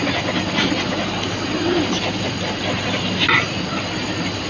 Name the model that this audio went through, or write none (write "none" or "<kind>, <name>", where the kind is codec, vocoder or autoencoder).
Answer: none